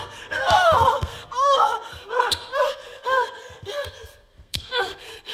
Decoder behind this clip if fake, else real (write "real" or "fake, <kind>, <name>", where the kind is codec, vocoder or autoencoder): fake, codec, SNAC